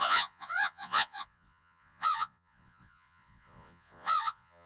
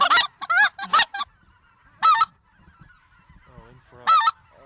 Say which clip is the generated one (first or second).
first